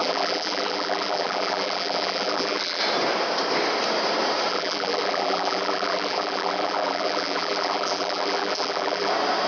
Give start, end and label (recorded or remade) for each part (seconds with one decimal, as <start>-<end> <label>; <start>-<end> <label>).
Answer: 0.0-2.8 remade; 2.8-4.5 recorded; 4.5-9.1 remade; 9.1-9.5 recorded